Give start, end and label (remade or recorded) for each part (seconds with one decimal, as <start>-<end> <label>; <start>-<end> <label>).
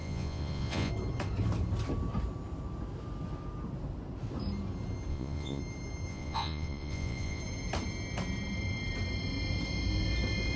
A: 0.0-0.9 remade; 0.9-5.1 recorded; 5.1-5.6 remade; 5.6-6.1 recorded; 6.1-7.4 remade; 7.4-10.6 recorded